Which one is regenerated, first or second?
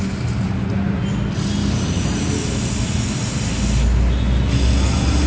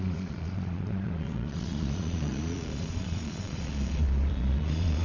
second